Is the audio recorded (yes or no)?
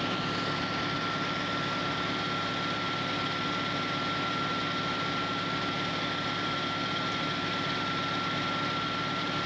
no